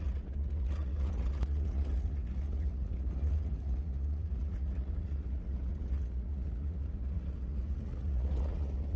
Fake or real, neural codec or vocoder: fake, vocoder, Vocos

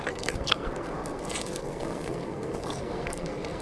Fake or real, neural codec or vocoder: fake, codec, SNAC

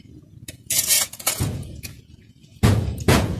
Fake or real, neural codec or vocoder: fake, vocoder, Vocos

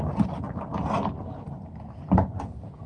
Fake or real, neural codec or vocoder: real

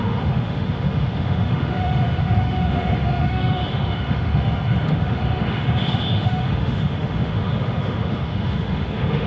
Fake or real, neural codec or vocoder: fake, autoencoder, DAC-VAE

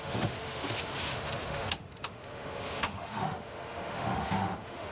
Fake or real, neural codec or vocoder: fake, autoencoder, DAC-VAE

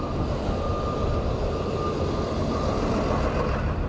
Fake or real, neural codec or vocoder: real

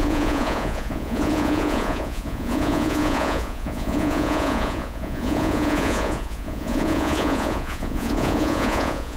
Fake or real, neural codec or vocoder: fake, vocoder, Vocos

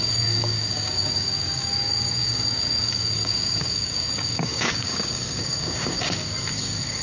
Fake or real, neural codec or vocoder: fake, codec, DAC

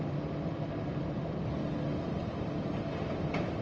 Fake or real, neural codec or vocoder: real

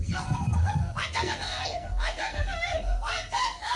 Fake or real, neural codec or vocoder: fake, codec, SNAC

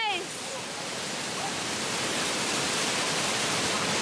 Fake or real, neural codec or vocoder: real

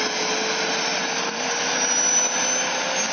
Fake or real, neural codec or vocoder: real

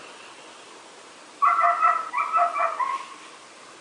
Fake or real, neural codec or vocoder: fake, vocoder, BigVGAN v2